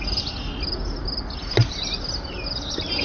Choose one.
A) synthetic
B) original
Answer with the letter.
B